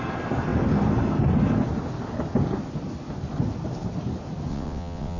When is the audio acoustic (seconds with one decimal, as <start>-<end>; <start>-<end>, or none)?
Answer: 0.0-4.5